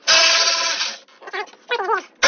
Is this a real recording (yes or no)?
yes